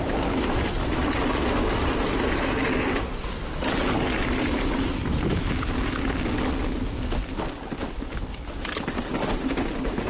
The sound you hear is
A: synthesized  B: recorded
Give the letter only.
B